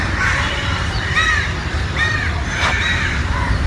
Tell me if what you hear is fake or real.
fake